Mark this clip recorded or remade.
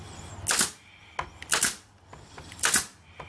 recorded